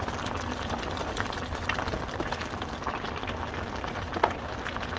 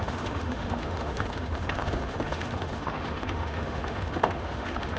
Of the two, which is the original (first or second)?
first